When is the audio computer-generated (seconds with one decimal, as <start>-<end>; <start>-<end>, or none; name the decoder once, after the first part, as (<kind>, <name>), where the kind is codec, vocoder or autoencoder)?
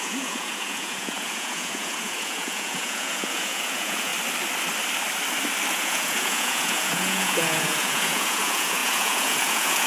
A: 0.0-4.1 (vocoder, Vocos); 5.7-9.9